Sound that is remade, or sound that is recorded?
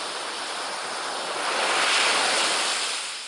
recorded